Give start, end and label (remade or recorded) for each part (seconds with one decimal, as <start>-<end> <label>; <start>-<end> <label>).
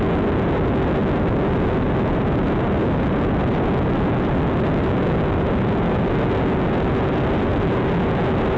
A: 0.0-8.6 recorded